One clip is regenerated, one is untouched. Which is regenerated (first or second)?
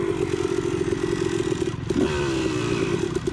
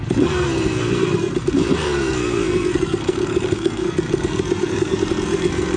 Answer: second